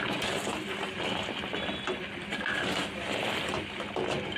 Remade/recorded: recorded